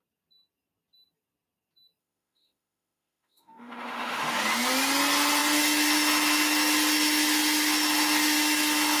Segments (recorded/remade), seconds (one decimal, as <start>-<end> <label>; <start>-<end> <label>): 0.0-2.0 recorded; 2.0-4.3 remade; 4.3-9.0 recorded